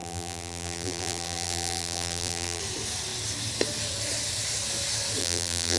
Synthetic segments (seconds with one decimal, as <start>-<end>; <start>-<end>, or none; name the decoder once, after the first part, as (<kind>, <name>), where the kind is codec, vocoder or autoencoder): 0.0-2.6 (vocoder, BigVGAN v2); 5.2-5.8